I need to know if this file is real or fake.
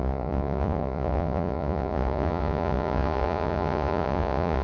fake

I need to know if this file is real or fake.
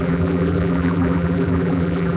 fake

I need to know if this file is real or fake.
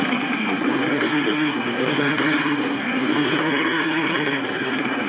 fake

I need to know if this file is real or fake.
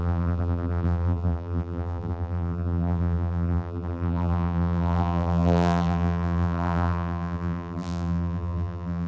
fake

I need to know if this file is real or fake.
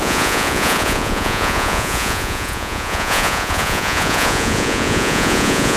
fake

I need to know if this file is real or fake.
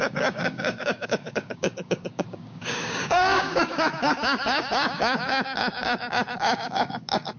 fake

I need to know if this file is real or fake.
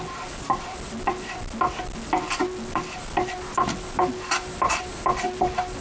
real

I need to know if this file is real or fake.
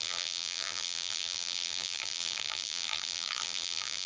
fake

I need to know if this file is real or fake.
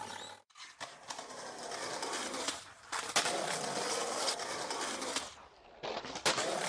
real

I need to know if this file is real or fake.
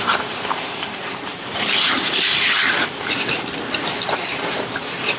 fake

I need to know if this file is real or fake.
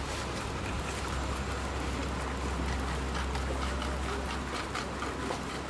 real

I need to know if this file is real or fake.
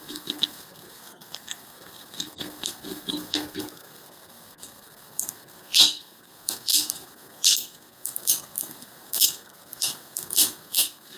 fake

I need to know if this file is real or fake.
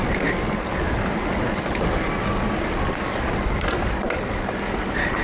real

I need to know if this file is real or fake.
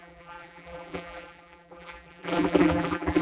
fake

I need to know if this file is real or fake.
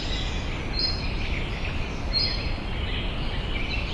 real